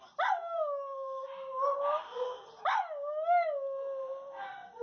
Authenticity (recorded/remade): recorded